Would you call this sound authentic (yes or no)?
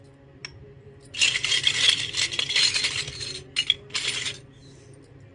yes